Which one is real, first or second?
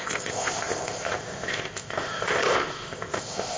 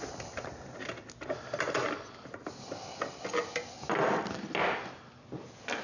second